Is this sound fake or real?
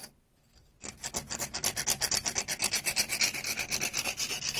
real